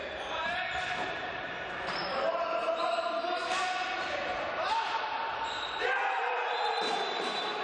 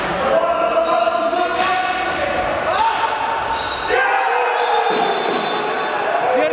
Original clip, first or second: second